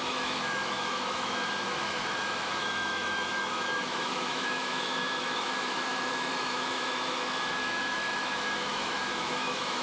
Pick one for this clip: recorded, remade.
remade